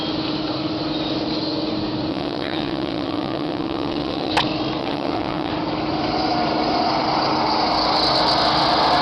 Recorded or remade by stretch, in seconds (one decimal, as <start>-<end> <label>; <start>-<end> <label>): 0.0-2.1 recorded; 2.1-4.3 remade; 4.3-4.8 recorded; 4.8-5.5 remade; 5.5-9.0 recorded